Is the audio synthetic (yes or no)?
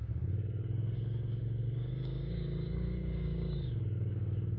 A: yes